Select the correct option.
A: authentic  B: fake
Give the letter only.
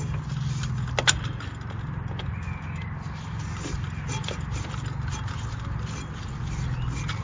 A